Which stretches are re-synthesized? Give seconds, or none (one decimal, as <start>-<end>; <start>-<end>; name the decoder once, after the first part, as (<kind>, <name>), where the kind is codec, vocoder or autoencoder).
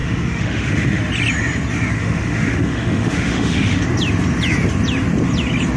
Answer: 0.0-1.0 (autoencoder, DAC-VAE); 2.0-3.8